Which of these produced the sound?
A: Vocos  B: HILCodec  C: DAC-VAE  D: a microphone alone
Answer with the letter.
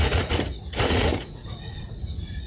A